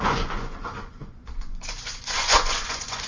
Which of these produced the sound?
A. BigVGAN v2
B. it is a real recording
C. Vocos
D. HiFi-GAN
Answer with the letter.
C